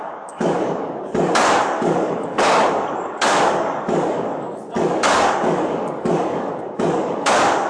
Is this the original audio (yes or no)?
no